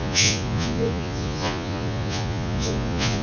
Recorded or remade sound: remade